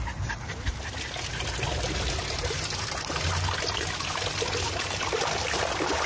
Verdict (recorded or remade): recorded